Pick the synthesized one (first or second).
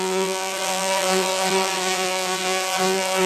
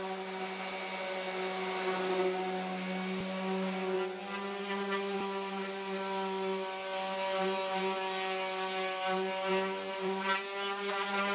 first